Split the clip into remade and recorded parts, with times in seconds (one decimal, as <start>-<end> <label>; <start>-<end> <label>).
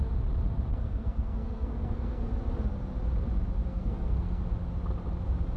0.0-0.7 recorded; 0.7-2.3 remade; 2.3-3.7 recorded; 3.7-4.4 remade; 4.4-5.6 recorded